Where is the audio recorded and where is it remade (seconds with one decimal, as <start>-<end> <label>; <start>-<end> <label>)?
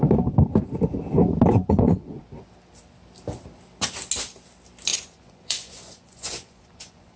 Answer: 0.0-1.5 recorded; 1.5-2.2 remade; 2.2-4.9 recorded; 4.9-7.2 remade